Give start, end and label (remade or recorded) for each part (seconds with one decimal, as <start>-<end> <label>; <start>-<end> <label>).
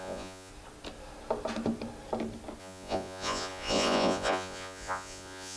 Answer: 0.0-0.5 remade; 0.5-2.6 recorded; 2.6-5.6 remade